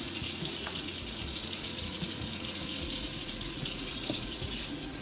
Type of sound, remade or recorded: remade